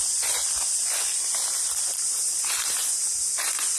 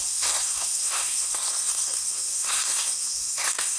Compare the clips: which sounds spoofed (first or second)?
second